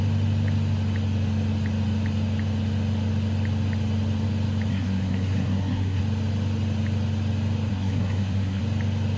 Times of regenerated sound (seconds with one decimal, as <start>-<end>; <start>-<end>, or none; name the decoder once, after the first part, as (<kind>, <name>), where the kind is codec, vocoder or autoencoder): 4.7-6.0 (codec, SNAC); 7.7-8.6